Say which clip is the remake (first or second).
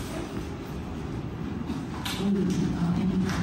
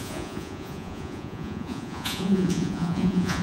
second